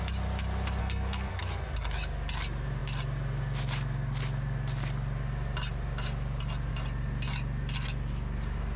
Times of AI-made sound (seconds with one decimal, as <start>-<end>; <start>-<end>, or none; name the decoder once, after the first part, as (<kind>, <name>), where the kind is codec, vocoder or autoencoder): 0.8-1.4 (codec, SNAC)

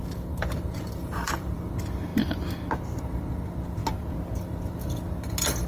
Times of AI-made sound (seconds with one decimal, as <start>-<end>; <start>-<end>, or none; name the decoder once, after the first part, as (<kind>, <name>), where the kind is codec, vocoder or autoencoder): 0.0-2.1 (vocoder, BigVGAN v2); 3.0-3.8; 4.4-5.7

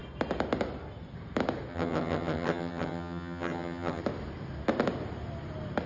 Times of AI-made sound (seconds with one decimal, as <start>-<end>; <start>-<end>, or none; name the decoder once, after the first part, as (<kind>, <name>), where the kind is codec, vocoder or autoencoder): 1.7-4.0 (vocoder, HiFi-GAN)

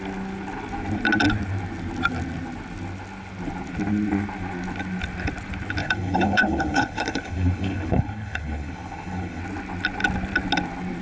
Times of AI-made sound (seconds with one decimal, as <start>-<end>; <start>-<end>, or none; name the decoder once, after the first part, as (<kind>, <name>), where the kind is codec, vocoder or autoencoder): 5.8-9.4 (codec, HILCodec)

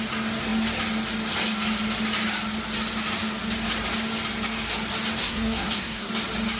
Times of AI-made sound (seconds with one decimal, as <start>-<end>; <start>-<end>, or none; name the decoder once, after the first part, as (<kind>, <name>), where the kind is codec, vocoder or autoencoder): 5.2-6.1 (codec, SNAC)

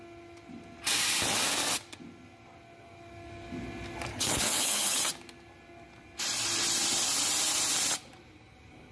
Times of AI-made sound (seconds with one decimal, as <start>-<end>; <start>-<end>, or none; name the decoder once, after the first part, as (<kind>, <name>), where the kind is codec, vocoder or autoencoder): 4.1-5.0 (codec, HILCodec)

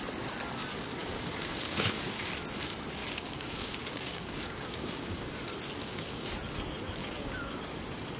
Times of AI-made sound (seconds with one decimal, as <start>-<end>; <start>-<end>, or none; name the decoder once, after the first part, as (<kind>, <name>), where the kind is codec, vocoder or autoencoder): 1.0-2.3 (codec, DAC); 3.0-5.3; 5.8-6.3; 7.0-7.6

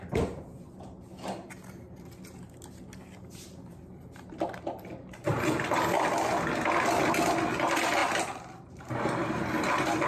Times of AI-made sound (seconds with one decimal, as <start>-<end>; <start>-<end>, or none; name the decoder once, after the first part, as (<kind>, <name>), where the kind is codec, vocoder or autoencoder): 5.3-6.1 (vocoder, BigVGAN v2); 8.0-8.7